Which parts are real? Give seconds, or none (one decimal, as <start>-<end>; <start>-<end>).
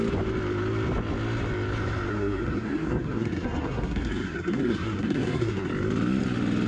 0.0-2.1; 5.7-6.7